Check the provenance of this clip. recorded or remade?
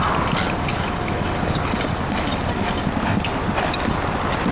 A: recorded